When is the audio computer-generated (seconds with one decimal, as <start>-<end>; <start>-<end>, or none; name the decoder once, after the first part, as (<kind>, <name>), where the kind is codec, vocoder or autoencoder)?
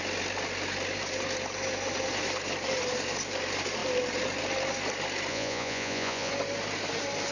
5.3-6.3 (vocoder, Vocos)